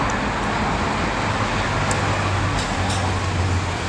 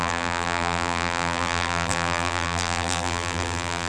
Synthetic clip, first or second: second